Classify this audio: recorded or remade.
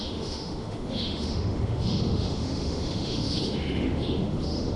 remade